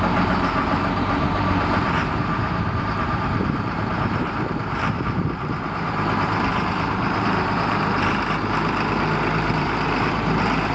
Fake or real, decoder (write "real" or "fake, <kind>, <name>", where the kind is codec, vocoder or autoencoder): fake, vocoder, BigVGAN v2